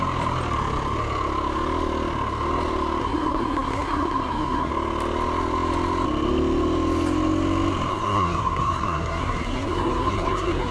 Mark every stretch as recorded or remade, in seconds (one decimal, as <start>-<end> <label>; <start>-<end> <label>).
0.0-3.0 recorded; 3.0-4.7 remade; 4.7-7.9 recorded; 7.9-10.7 remade